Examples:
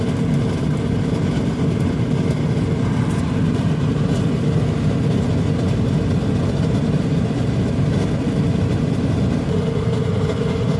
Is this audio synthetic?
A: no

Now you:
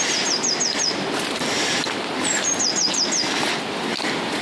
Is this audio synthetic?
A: no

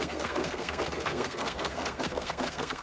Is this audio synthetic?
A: yes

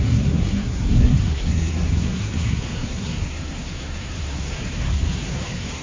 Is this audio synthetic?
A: yes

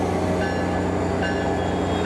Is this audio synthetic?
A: no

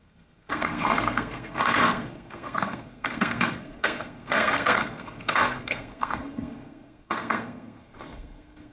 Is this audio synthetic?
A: yes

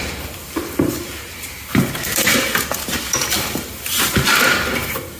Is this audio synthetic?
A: no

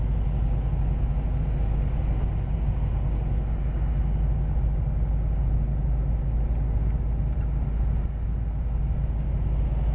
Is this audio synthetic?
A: no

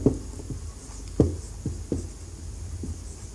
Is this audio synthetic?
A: no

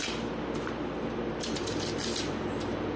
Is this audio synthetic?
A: no